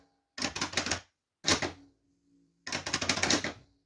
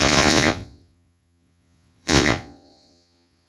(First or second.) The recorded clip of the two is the first